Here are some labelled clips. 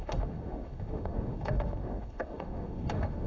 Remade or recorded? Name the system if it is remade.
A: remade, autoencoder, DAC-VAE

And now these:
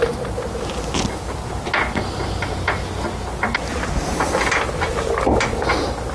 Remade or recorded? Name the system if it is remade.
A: recorded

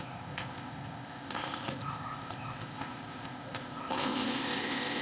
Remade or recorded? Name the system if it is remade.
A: remade, codec, ZipCodec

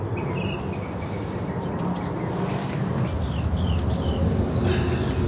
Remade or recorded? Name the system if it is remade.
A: recorded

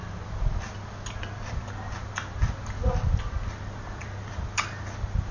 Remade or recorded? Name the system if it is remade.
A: recorded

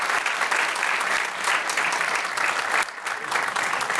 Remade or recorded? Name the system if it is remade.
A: recorded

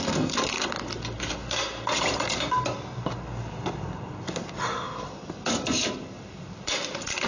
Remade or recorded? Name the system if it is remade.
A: recorded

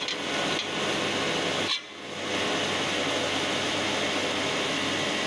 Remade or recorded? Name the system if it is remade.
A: recorded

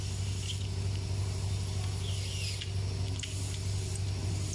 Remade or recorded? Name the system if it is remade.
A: recorded